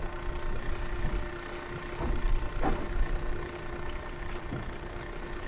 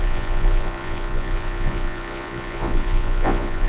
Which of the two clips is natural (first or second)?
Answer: first